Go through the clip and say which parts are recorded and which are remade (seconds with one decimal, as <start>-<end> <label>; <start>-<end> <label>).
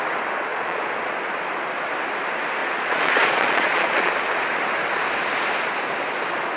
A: 0.0-0.5 recorded; 0.5-1.1 remade; 1.1-2.6 recorded; 2.6-4.1 remade; 4.1-6.6 recorded